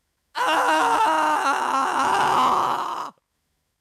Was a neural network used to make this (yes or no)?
yes